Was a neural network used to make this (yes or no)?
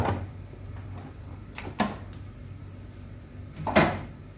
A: no